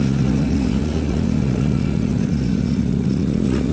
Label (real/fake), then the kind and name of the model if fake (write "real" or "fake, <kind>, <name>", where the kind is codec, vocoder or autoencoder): fake, vocoder, Vocos